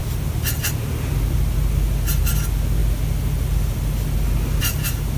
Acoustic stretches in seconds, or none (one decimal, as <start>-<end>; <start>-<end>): 0.0-5.2